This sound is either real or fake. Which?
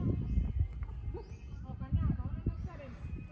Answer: real